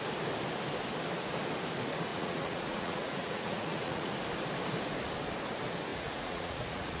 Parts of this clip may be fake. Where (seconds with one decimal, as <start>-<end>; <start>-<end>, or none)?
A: 2.1-4.1; 5.9-7.0